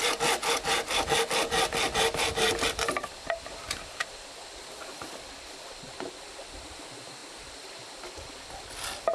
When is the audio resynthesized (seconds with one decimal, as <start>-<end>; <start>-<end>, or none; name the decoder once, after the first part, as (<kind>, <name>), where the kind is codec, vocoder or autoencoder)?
none